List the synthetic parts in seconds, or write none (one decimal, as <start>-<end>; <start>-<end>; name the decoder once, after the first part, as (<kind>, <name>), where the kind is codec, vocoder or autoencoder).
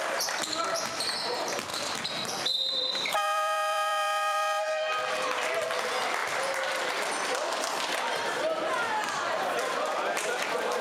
1.7-4.9 (vocoder, BigVGAN v2); 6.2-6.9